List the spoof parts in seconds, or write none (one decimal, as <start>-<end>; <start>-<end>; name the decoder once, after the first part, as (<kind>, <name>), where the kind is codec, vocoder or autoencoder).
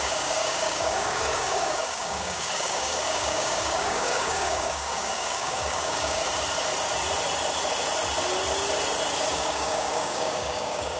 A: 0.0-6.2 (codec, DAC); 9.3-11.0